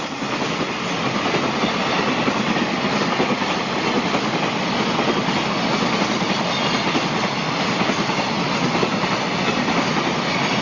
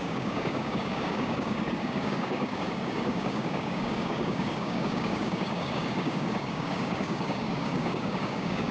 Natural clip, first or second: first